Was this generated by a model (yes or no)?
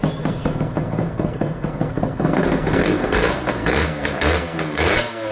yes